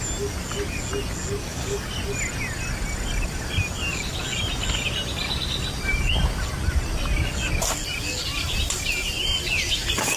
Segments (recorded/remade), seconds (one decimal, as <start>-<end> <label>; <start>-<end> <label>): 0.0-1.4 recorded; 1.4-1.9 remade; 1.9-10.2 recorded